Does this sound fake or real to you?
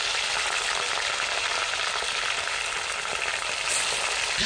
real